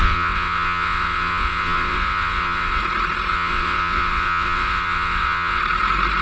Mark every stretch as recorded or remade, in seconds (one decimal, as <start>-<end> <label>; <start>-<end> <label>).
0.0-2.8 remade; 2.8-3.3 recorded; 3.3-5.6 remade; 5.6-6.2 recorded